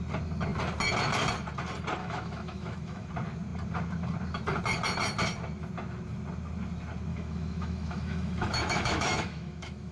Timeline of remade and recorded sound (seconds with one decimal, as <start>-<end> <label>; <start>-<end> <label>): 0.0-2.0 recorded; 2.0-3.1 remade; 3.1-7.1 recorded; 7.1-9.9 remade